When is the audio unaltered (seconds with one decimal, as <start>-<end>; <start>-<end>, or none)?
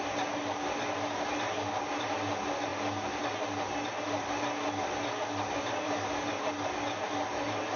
0.0-7.8